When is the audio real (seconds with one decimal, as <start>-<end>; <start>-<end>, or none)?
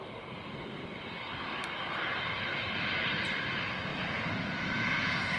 0.0-3.9